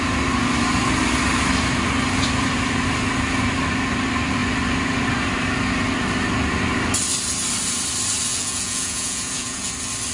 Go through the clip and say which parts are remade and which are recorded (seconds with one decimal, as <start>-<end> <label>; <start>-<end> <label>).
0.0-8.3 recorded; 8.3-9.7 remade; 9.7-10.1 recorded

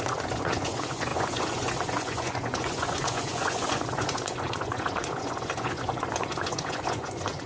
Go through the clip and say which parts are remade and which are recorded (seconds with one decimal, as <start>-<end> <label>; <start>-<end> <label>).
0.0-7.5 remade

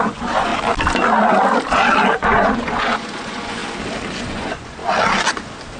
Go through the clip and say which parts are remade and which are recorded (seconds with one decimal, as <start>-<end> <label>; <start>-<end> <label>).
0.0-0.5 remade; 0.5-2.1 recorded; 2.1-3.6 remade; 3.6-4.2 recorded; 4.2-4.8 remade; 4.8-5.8 recorded